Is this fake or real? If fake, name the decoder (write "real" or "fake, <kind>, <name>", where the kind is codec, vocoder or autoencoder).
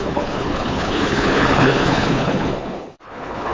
fake, codec, HILCodec